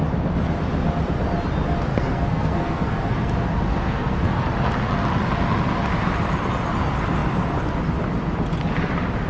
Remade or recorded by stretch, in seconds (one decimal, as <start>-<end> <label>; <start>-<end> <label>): 0.0-1.9 recorded; 1.9-3.3 remade; 3.3-3.7 recorded; 3.7-4.4 remade; 4.4-9.3 recorded

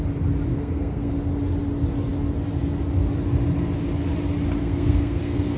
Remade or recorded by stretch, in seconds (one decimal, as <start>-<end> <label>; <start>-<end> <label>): 0.0-0.5 recorded; 0.5-1.1 remade; 1.1-4.6 recorded; 4.6-5.6 remade